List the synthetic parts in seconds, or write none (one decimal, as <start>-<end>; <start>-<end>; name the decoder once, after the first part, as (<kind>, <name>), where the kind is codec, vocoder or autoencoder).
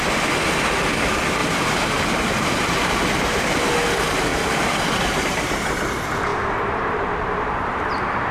1.4-3.0 (vocoder, BigVGAN v2); 6.3-8.3